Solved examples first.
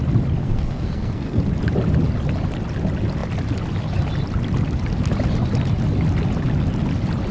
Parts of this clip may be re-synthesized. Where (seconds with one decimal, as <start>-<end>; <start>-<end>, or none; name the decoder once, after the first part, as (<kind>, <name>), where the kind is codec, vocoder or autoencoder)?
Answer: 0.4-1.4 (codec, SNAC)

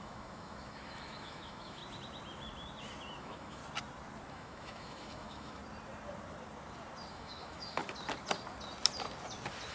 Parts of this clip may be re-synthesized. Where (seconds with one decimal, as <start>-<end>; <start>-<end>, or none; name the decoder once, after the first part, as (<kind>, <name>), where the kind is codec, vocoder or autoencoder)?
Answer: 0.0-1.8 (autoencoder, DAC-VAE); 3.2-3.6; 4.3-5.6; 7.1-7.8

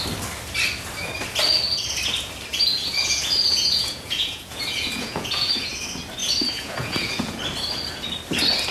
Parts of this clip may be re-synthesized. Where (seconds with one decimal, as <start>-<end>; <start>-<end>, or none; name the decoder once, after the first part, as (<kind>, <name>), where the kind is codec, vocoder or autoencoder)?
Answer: 2.5-5.7 (vocoder, Vocos); 6.2-7.4

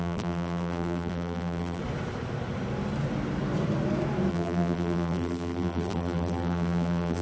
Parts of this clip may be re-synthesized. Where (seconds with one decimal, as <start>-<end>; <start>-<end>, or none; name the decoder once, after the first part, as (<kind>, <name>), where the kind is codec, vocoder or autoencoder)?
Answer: 0.0-1.8 (vocoder, BigVGAN v2); 4.3-7.2

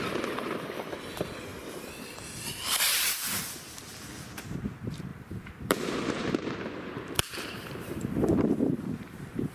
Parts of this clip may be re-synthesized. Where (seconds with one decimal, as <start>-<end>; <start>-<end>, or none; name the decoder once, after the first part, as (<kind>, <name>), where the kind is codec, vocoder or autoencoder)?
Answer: 0.0-1.5 (vocoder, BigVGAN v2); 4.4-9.5

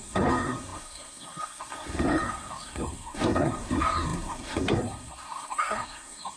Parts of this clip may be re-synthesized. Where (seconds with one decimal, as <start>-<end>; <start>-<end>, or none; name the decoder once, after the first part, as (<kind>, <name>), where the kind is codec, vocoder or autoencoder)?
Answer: 0.0-6.4 (codec, SNAC)